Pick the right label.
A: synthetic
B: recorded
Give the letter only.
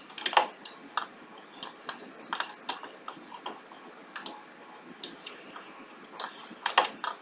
B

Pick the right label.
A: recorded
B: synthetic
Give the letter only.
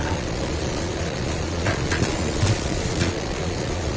B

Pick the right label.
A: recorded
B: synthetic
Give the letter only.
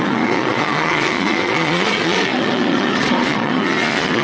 B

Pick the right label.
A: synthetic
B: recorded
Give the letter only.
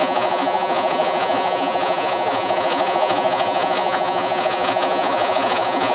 A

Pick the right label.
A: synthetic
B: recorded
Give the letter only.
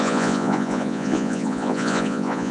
A